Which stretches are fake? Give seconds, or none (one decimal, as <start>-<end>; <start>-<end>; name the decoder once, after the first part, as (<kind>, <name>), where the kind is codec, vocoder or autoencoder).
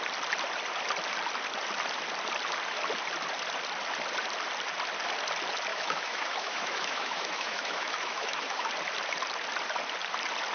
5.7-8.7 (autoencoder, DAC-VAE)